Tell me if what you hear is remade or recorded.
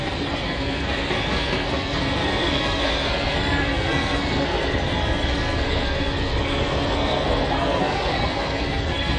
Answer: remade